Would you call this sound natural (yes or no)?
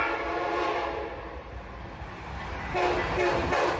yes